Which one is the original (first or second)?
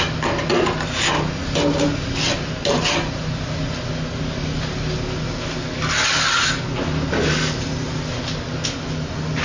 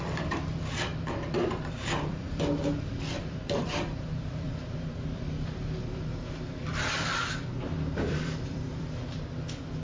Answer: first